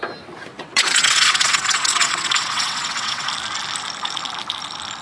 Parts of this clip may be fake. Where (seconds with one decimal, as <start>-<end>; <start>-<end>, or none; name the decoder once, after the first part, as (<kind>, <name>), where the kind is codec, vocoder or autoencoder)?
0.5-3.3 (vocoder, WaveNeXt)